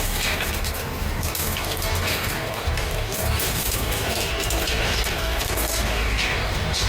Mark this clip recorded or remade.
remade